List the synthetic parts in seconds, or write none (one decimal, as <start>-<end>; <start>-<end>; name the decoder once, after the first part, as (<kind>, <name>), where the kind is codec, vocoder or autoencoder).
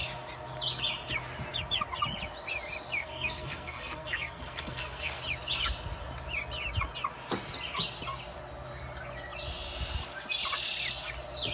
3.0-5.2 (codec, SNAC)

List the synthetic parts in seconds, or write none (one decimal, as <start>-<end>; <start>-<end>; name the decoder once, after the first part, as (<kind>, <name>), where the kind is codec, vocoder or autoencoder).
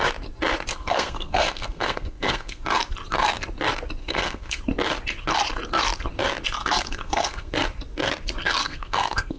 0.7-2.6 (codec, SNAC); 4.0-4.6; 6.6-7.5; 8.6-9.4